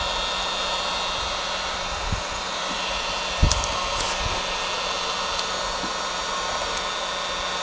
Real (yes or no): yes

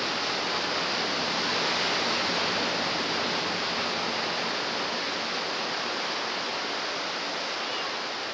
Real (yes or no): yes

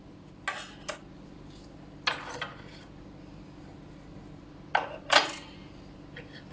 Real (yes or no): yes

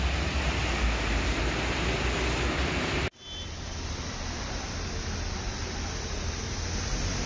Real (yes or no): yes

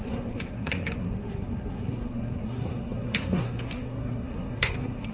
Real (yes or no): no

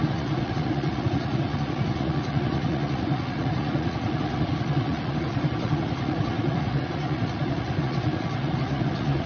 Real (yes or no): no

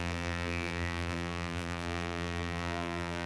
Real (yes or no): no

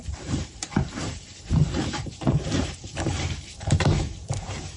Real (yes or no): no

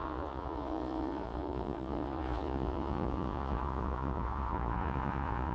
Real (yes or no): no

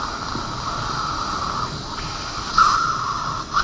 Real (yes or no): yes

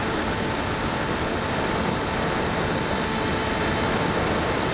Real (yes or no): yes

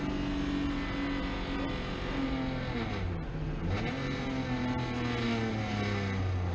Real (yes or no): yes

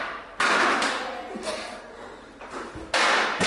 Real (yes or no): yes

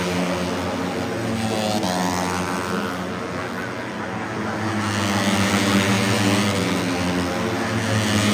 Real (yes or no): yes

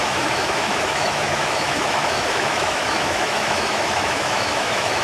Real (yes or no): no